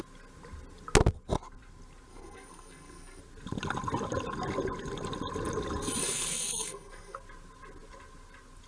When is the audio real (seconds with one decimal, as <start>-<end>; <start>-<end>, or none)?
0.0-2.1; 3.2-6.0; 7.2-8.7